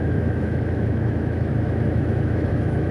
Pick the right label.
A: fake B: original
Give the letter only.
A